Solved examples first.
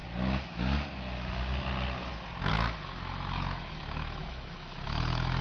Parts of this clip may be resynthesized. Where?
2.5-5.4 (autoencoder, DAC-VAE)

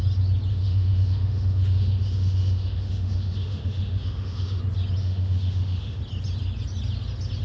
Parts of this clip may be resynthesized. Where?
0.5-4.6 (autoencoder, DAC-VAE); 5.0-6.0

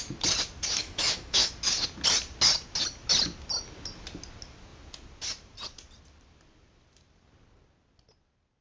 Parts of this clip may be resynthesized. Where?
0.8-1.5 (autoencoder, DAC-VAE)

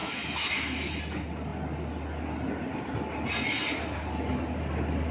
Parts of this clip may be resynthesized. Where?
0.0-1.0 (autoencoder, DAC-VAE)

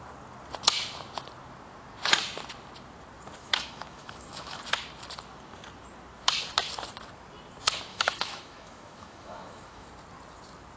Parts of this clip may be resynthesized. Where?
3.4-4.6 (autoencoder, DAC-VAE); 7.9-9.9